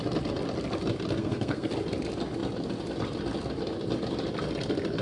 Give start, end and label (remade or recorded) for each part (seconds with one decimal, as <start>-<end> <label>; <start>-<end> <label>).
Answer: 0.0-1.2 recorded; 1.2-1.7 remade; 1.7-5.0 recorded